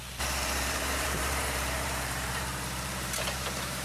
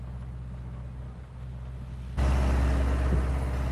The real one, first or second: second